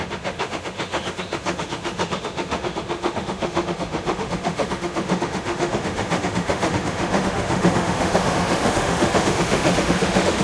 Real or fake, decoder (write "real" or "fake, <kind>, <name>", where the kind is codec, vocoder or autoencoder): fake, autoencoder, DAC-VAE